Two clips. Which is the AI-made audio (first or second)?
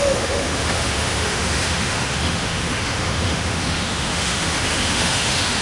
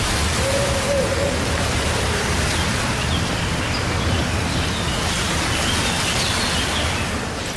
first